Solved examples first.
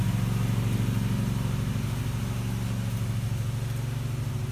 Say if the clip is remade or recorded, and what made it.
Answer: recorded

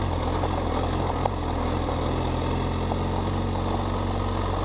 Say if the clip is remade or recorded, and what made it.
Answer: recorded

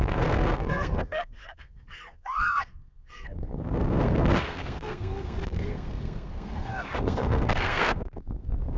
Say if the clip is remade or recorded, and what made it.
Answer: remade, codec, SNAC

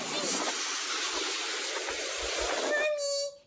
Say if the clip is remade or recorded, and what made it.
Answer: recorded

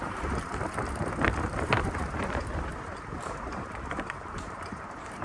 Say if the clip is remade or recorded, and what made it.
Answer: remade, vocoder, BigVGAN v2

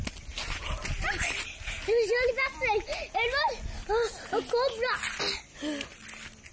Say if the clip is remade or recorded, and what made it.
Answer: recorded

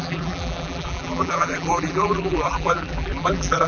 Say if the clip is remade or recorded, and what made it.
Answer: remade, vocoder, BigVGAN v2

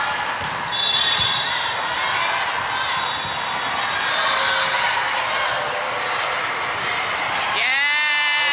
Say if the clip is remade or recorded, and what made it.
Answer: recorded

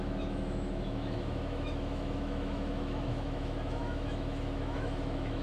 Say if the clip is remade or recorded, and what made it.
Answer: remade, autoencoder, DAC-VAE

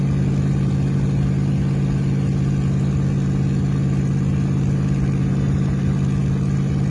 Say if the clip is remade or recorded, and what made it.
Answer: recorded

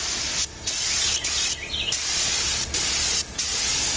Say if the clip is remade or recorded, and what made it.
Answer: recorded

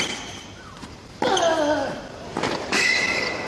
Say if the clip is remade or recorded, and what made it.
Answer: recorded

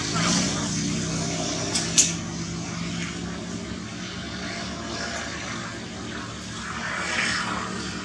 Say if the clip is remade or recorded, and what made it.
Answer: recorded